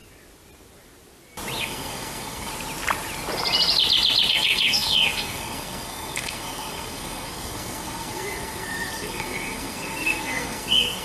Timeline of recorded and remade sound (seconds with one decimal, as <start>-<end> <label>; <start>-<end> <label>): 0.0-1.6 recorded; 1.6-2.5 remade; 2.5-4.3 recorded; 4.3-11.0 remade